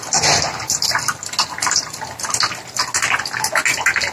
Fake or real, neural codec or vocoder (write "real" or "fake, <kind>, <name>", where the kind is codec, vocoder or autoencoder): real